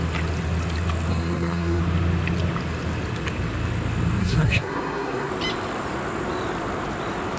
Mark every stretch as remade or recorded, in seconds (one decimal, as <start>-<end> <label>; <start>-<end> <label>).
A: 0.0-1.1 recorded; 1.1-1.8 remade; 1.8-4.2 recorded; 4.2-5.3 remade; 5.3-7.4 recorded